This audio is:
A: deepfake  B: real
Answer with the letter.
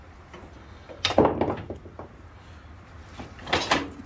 B